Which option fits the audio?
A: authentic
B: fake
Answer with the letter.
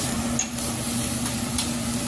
A